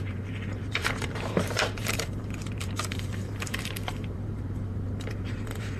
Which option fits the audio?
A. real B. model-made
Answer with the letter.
B